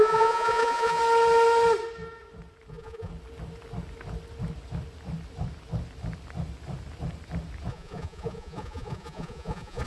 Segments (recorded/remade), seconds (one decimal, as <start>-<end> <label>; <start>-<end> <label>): 0.0-1.0 remade; 1.0-2.7 recorded; 2.7-3.1 remade; 3.1-7.7 recorded; 7.7-9.9 remade